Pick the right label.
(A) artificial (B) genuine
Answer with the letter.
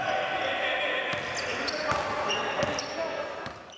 B